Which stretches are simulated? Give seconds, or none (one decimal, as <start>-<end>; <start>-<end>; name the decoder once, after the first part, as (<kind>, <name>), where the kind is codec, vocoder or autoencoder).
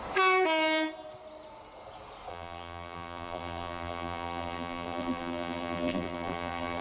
2.3-6.8 (vocoder, BigVGAN v2)